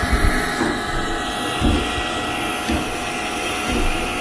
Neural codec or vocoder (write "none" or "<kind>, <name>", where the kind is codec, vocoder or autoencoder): none